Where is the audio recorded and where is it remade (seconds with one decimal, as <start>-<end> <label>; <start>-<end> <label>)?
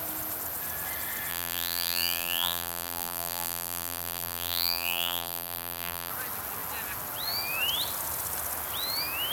0.0-1.3 recorded; 1.3-6.1 remade; 6.1-9.3 recorded